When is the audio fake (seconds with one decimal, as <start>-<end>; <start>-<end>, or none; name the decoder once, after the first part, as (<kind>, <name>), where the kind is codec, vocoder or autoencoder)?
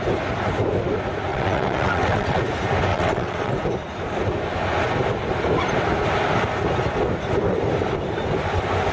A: 1.3-2.4 (vocoder, WaveNeXt); 2.9-3.5